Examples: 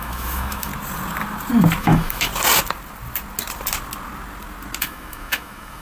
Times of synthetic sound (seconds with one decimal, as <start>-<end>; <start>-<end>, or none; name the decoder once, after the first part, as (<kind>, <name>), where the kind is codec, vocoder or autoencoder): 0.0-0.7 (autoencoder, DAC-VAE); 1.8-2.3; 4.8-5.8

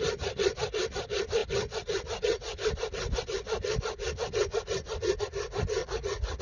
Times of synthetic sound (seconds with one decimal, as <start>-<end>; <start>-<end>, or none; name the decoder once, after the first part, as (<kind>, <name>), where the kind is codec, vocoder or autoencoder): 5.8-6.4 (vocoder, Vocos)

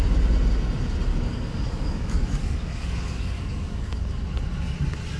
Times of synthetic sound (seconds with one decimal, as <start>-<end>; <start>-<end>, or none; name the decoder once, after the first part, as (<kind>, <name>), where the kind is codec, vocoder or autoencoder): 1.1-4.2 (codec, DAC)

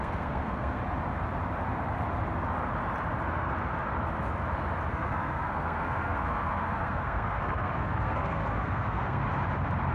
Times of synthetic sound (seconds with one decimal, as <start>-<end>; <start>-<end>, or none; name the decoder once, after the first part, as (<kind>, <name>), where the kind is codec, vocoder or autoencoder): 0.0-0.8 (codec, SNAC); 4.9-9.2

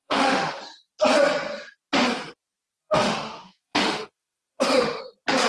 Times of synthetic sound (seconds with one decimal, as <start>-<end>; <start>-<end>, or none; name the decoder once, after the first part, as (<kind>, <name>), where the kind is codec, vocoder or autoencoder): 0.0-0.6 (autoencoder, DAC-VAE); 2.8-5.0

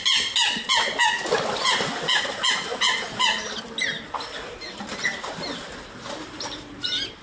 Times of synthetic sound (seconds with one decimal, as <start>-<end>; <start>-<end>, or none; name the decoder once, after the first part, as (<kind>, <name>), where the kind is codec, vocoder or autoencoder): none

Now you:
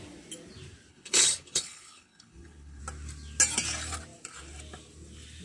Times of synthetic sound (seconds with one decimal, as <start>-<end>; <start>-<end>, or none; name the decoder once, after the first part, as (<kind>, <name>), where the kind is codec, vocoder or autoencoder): 0.9-2.8 (codec, HILCodec)

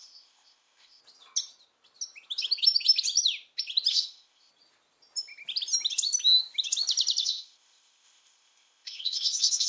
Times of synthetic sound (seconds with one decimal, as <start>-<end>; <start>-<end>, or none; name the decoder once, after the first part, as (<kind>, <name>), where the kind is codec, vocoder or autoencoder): 0.0-1.0 (codec, ZipCodec); 3.9-4.5; 7.2-9.7